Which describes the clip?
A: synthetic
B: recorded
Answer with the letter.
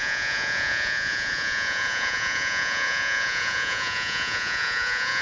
A